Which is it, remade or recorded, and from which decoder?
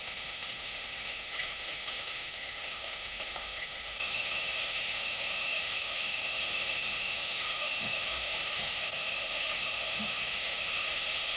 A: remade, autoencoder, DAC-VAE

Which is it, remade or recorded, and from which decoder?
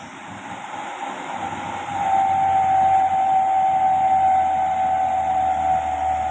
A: recorded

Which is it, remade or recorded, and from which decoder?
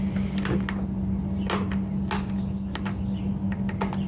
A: recorded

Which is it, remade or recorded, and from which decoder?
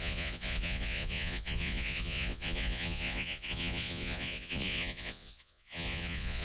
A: remade, vocoder, Vocos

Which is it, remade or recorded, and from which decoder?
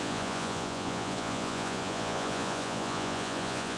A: remade, vocoder, Vocos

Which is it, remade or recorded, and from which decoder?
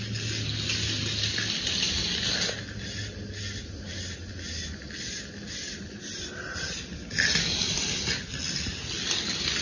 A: recorded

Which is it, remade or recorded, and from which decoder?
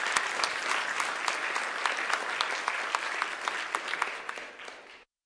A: recorded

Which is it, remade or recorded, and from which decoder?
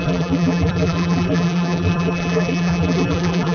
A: remade, vocoder, BigVGAN v2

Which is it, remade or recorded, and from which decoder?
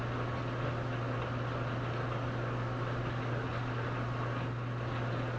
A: recorded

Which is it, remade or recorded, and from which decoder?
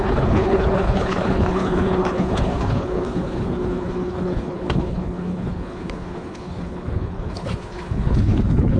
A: remade, codec, HILCodec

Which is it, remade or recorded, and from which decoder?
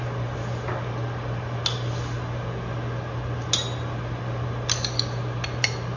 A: recorded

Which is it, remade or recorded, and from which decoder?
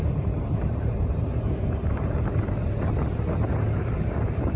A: remade, vocoder, BigVGAN v2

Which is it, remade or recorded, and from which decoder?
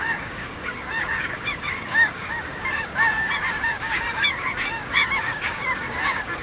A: remade, codec, DAC